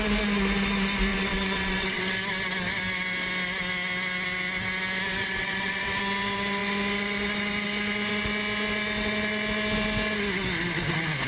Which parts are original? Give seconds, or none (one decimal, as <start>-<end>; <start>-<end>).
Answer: 0.0-1.1; 2.0-5.2; 6.0-11.3